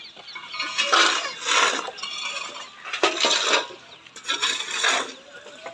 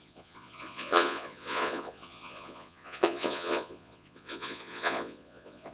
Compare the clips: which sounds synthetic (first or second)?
second